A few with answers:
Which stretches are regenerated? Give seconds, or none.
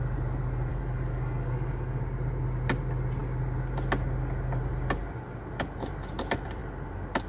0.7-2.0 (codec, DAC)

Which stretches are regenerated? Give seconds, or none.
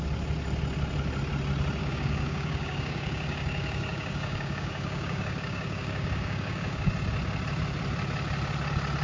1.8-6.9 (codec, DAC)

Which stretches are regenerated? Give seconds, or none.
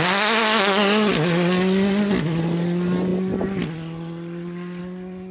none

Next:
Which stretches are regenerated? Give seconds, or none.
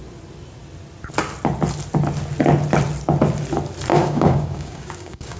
3.9-5.4 (codec, DAC)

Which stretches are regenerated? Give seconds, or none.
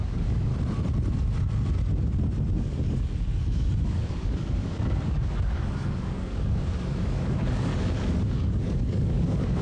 0.0-0.5 (codec, DAC); 2.6-9.6